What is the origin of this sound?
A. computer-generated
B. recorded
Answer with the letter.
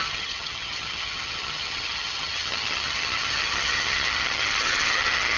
A